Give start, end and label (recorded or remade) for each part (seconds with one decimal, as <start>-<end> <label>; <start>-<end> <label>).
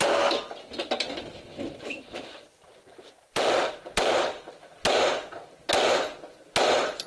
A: 0.0-2.7 recorded; 2.7-3.7 remade; 3.7-7.1 recorded